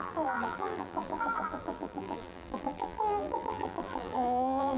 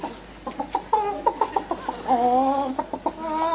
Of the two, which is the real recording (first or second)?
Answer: second